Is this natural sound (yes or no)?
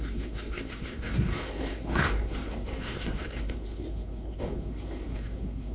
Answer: no